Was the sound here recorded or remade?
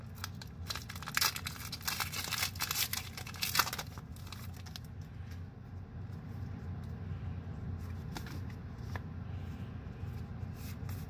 recorded